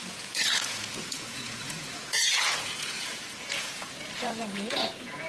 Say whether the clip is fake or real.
fake